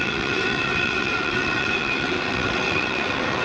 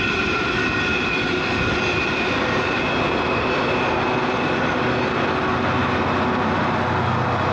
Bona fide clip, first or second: second